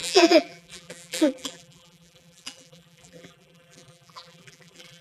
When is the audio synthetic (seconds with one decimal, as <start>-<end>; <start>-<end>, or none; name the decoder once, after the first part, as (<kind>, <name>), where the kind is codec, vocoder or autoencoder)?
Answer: 0.0-5.0 (vocoder, BigVGAN v2)